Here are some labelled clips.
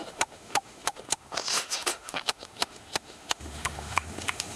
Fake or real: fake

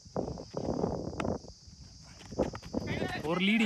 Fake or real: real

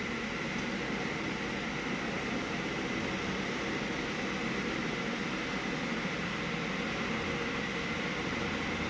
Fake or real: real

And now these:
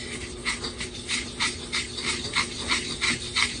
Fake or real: real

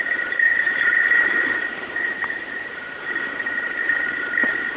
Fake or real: fake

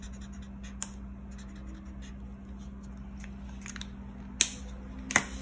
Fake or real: real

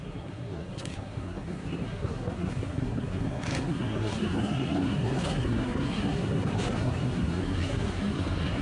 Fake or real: fake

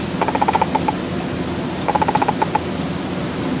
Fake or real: real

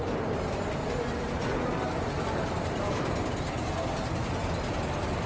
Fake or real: real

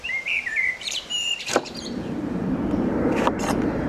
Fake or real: fake